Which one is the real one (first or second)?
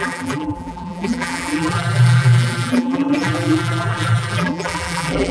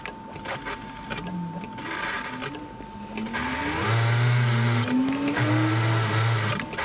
second